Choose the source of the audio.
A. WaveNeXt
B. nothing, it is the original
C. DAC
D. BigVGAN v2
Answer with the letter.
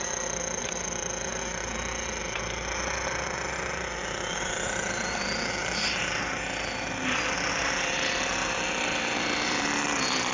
B